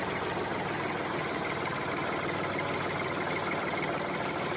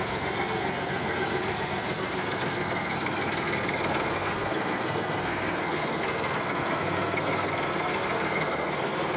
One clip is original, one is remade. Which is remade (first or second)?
second